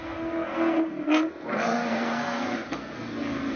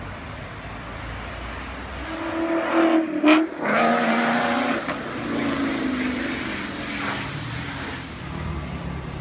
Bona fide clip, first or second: second